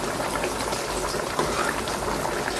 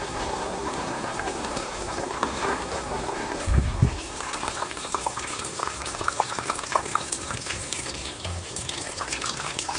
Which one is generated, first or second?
second